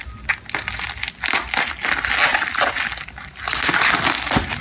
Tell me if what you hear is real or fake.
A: real